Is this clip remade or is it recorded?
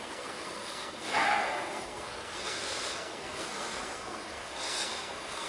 remade